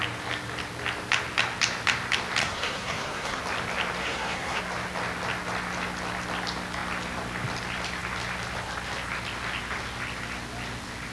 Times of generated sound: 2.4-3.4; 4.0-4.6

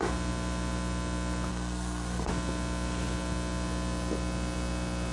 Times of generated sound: 1.5-2.3

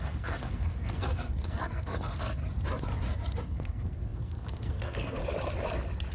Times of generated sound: 0.0-2.4; 3.4-5.2

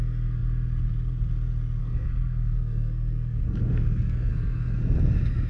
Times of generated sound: 1.8-4.7

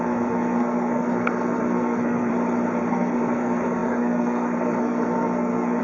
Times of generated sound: 0.0-2.3; 2.9-5.8

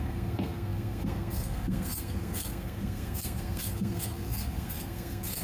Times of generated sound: 0.0-5.4

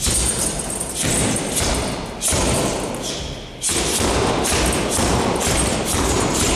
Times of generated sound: none

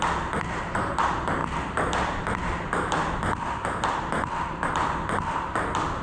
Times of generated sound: none